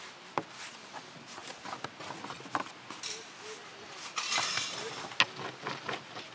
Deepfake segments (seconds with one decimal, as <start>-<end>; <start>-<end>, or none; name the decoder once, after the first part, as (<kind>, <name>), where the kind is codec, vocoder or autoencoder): none